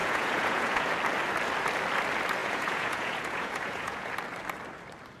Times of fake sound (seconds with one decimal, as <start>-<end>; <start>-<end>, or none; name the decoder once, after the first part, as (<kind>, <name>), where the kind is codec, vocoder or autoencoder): 0.0-0.9 (vocoder, Vocos); 2.4-4.1